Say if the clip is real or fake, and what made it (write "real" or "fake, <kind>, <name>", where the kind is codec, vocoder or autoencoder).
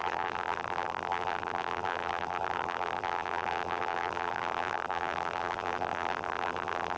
fake, vocoder, BigVGAN v2